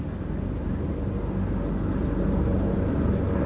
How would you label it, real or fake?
real